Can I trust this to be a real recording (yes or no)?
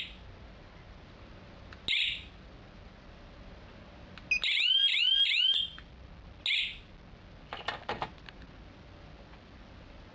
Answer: yes